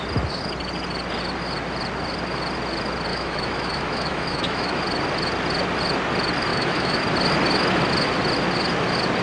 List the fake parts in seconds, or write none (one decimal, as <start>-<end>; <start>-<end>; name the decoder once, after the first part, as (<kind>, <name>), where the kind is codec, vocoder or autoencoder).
3.1-4.8 (autoencoder, DAC-VAE); 6.5-7.0